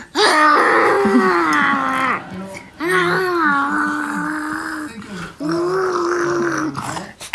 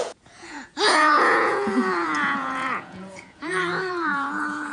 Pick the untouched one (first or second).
first